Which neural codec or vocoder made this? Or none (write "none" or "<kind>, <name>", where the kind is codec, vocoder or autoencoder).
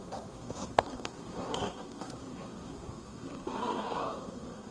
codec, SNAC